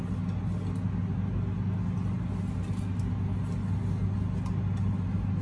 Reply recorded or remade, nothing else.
recorded